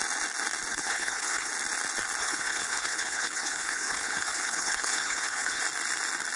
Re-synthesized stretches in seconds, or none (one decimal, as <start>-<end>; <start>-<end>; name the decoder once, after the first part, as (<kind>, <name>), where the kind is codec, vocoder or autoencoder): 0.7-1.5 (codec, HILCodec); 2.2-5.6